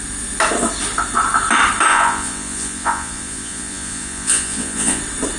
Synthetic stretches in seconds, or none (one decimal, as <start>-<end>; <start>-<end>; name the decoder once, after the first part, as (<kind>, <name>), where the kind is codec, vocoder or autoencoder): 1.9-5.0 (vocoder, Vocos)